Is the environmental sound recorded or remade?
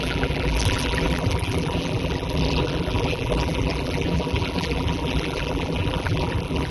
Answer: remade